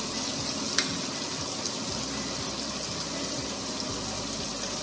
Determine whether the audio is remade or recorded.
recorded